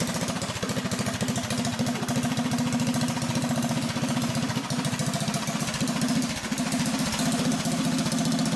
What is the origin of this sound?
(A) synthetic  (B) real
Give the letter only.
B